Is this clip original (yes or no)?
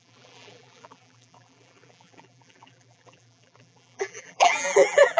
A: no